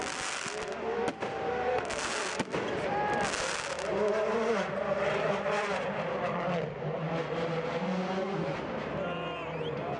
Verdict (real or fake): real